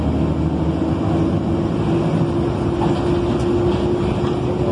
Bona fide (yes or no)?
yes